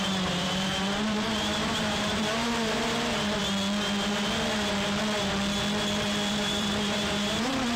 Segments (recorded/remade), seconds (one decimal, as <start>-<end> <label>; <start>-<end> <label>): 0.0-3.4 remade; 3.4-6.3 recorded; 6.3-7.8 remade